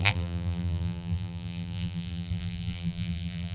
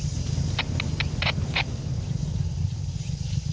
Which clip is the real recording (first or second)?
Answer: second